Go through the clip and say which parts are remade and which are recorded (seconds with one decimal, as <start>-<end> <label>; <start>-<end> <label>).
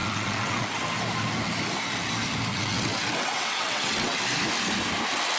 0.0-0.8 remade; 0.8-2.5 recorded; 2.5-4.2 remade; 4.2-5.4 recorded